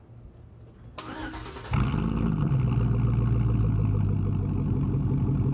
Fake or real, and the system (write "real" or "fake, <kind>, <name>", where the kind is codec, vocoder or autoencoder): real